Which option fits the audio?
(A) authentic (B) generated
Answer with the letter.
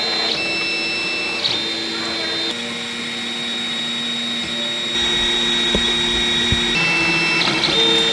A